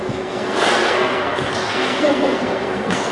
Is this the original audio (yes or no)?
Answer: no